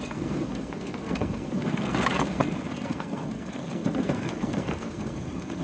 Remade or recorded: remade